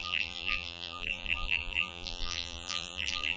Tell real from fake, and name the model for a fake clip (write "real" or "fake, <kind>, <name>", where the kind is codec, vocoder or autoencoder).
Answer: fake, vocoder, BigVGAN v2